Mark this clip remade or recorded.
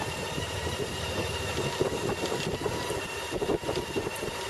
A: recorded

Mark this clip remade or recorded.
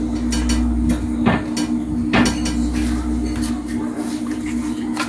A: recorded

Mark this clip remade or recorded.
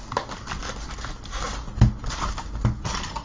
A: recorded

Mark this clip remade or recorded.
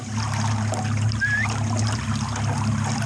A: recorded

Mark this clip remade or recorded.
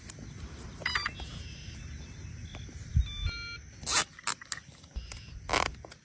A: recorded